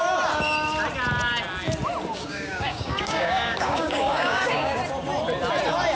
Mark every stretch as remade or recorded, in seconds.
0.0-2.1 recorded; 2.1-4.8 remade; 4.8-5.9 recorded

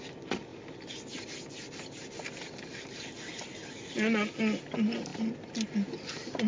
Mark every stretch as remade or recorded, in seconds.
0.0-6.5 recorded

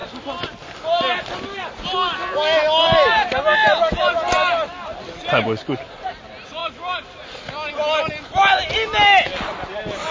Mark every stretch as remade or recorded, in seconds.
0.0-10.1 recorded

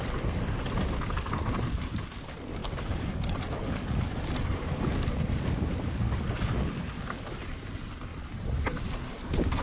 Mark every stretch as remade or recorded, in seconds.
0.0-9.6 recorded

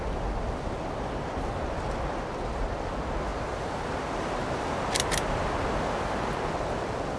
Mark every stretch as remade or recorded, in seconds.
0.0-7.2 recorded

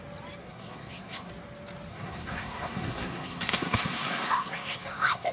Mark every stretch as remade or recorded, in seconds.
0.0-0.4 recorded; 0.4-1.3 remade; 1.3-1.9 recorded; 1.9-5.3 remade

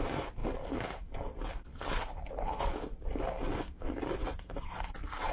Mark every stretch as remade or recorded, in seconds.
0.0-5.3 recorded